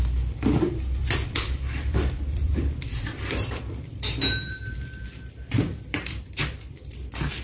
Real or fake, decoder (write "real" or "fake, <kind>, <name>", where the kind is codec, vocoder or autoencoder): fake, vocoder, BigVGAN v2